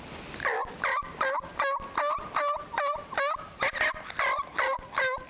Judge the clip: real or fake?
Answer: real